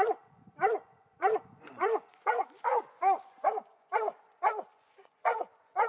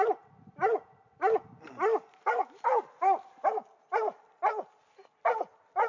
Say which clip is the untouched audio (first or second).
second